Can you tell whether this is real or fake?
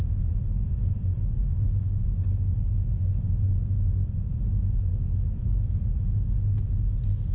real